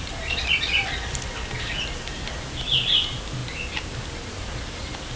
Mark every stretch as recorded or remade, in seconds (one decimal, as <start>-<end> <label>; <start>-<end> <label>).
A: 0.0-5.2 recorded